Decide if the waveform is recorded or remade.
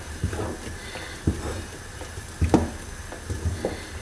recorded